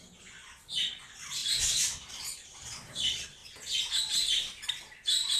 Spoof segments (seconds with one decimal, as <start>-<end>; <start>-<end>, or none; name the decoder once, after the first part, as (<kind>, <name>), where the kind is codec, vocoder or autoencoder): 0.0-3.4 (vocoder, BigVGAN v2); 4.0-5.4